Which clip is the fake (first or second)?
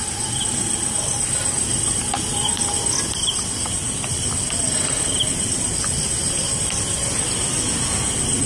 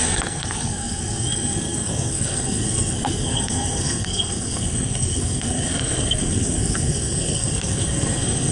second